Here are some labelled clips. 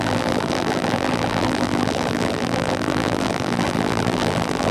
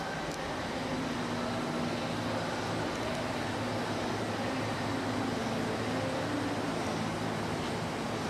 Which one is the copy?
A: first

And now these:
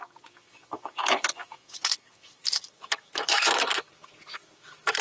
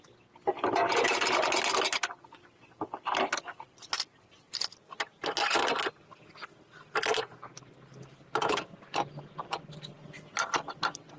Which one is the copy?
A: first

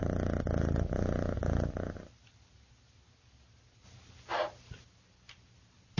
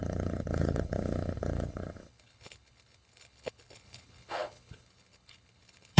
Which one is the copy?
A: second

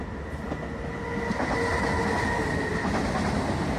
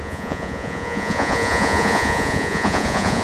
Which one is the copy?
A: second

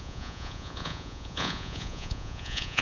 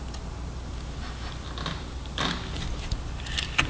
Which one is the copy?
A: first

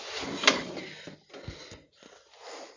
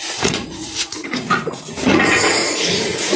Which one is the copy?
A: second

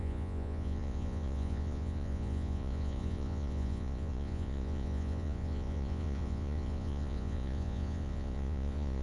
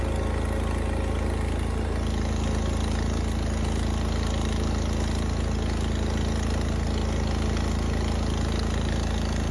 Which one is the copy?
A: first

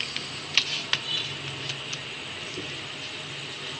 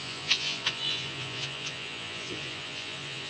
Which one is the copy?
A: second